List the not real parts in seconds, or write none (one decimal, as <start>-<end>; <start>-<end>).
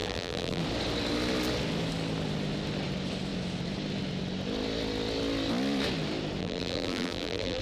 0.0-0.6; 6.4-7.6